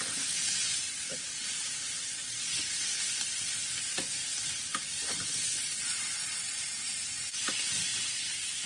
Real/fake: fake